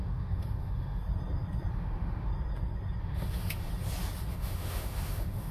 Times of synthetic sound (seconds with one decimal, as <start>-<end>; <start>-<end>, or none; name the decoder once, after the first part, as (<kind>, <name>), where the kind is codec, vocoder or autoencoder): 0.0-1.0 (autoencoder, DAC-VAE); 1.7-2.3; 3.0-3.7; 4.3-5.5